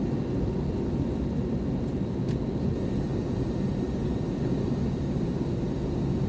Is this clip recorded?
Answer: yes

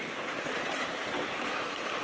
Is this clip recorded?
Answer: yes